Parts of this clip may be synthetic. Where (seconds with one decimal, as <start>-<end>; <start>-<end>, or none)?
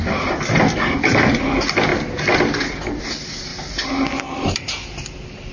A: none